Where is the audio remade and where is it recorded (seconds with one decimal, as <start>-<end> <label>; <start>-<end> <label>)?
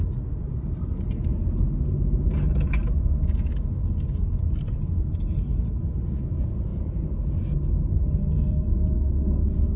0.0-8.2 recorded; 8.2-9.4 remade; 9.4-9.8 recorded